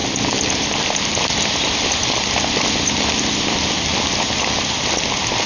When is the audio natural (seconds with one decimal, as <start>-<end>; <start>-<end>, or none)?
0.0-5.5